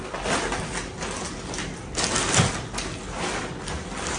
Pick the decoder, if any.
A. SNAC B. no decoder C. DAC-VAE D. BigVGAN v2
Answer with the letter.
B